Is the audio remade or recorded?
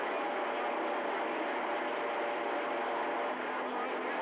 recorded